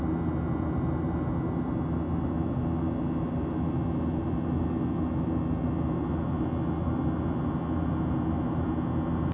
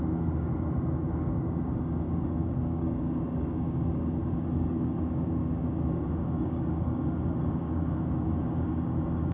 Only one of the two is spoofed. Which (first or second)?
second